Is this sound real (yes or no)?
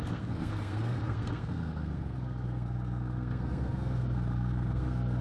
no